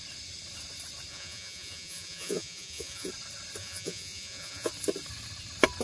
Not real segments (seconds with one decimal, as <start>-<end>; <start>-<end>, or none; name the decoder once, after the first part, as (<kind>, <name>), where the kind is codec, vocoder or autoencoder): 1.1-3.1 (vocoder, Vocos); 3.6-4.7